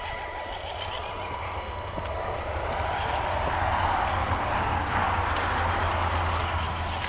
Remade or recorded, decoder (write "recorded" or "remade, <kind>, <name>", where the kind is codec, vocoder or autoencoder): recorded